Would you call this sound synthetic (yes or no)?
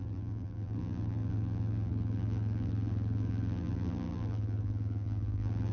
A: yes